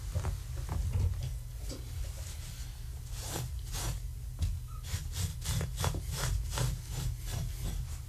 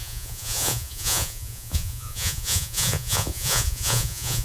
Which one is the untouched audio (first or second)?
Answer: first